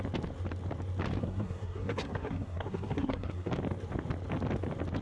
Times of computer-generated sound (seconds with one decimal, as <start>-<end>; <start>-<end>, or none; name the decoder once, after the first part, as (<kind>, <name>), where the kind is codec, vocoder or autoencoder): 1.2-3.5 (codec, SNAC)